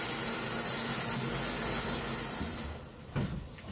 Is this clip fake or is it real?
real